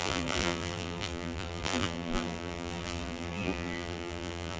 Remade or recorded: remade